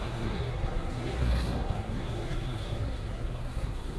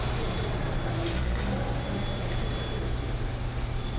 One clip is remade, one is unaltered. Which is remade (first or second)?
first